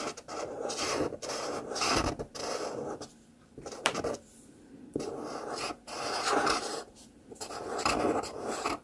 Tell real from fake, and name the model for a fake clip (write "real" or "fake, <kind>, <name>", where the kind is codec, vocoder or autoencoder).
fake, vocoder, BigVGAN v2